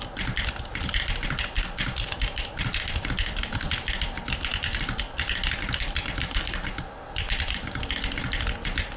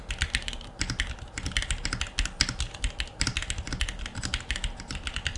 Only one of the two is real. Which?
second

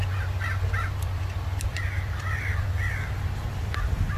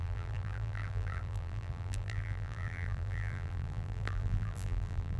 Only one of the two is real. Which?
first